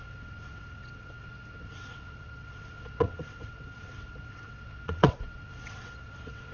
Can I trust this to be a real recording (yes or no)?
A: no